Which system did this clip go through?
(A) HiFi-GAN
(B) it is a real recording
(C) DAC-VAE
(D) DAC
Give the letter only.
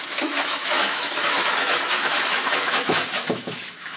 C